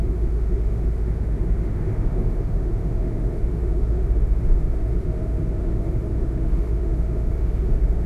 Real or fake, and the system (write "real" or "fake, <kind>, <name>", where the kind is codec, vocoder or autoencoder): fake, autoencoder, DAC-VAE